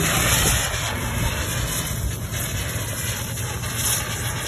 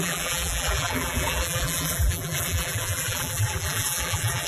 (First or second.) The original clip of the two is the first